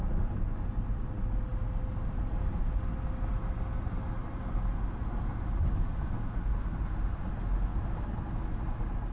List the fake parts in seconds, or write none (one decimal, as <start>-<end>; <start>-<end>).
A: none